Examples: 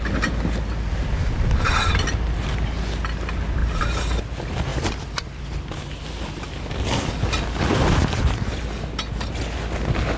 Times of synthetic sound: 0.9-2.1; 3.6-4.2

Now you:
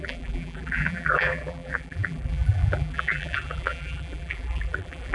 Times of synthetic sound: 0.0-5.1